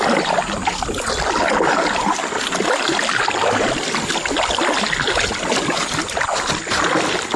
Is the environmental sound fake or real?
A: real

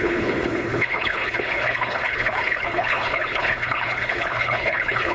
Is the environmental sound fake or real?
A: fake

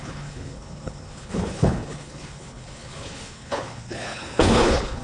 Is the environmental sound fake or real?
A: fake